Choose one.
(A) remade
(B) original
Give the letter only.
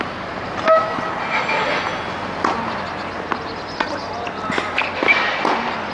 B